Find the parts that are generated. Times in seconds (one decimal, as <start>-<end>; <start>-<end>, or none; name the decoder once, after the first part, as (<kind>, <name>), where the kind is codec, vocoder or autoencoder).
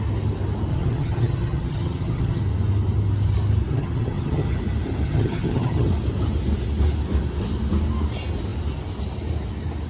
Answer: 0.7-2.4 (vocoder, HiFi-GAN); 3.7-4.6; 5.1-5.9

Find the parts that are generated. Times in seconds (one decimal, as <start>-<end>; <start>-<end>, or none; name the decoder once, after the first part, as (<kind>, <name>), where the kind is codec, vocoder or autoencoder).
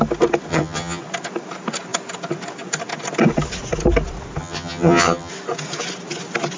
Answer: 0.5-1.0 (vocoder, HiFi-GAN); 4.4-5.3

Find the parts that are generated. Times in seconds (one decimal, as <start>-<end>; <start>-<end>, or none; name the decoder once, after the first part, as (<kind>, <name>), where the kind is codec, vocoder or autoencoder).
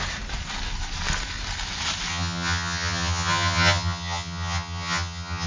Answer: 2.1-5.5 (vocoder, HiFi-GAN)